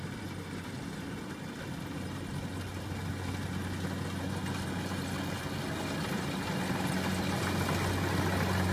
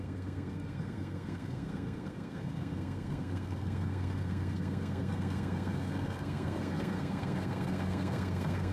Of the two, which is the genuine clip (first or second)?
first